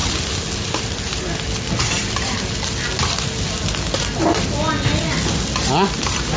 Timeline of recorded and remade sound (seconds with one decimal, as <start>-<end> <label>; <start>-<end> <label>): 0.0-6.4 recorded